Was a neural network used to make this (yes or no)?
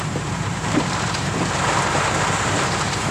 yes